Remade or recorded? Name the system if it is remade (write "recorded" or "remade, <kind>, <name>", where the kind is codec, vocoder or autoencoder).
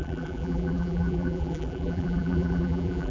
remade, vocoder, BigVGAN v2